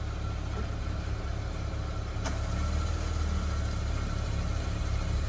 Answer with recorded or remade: recorded